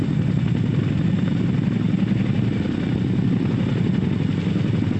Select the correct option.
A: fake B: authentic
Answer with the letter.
B